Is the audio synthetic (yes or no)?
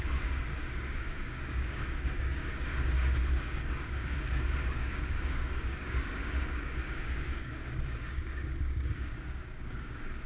yes